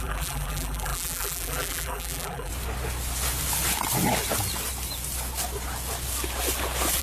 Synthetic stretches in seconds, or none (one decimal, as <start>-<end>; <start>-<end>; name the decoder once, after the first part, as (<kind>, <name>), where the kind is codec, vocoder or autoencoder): 0.0-2.5 (vocoder, BigVGAN v2)